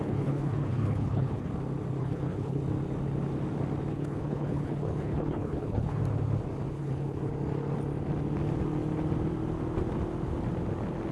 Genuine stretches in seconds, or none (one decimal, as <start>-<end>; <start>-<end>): 1.5-2.0; 2.6-3.9; 6.0-6.7; 7.3-11.1